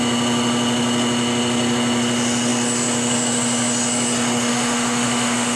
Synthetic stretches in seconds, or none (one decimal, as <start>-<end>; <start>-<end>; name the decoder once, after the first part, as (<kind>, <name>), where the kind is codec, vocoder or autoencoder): 4.5-5.6 (autoencoder, DAC-VAE)